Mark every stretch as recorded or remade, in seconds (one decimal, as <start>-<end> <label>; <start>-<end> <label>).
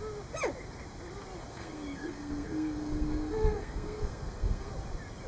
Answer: 0.0-1.5 recorded; 1.5-4.7 remade; 4.7-5.3 recorded